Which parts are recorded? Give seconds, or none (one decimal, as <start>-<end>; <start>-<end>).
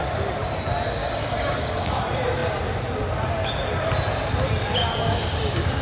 0.0-1.0; 2.0-4.8